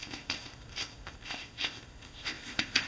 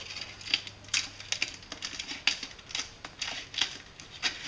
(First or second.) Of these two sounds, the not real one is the first